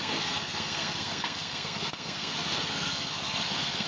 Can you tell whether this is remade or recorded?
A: remade